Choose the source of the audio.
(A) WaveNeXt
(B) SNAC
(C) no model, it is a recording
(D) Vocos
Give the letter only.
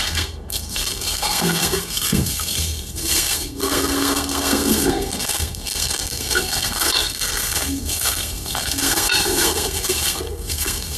B